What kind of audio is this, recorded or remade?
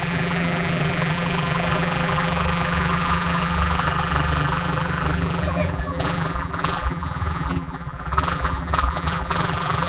remade